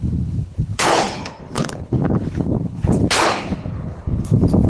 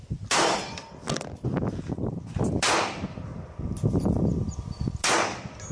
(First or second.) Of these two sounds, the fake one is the first